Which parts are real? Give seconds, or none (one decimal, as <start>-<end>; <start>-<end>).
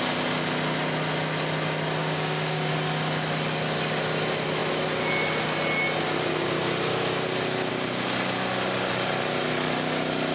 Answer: 0.0-2.0; 2.7-10.3